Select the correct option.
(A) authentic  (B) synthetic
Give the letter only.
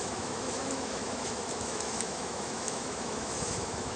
B